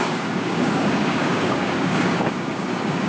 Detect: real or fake fake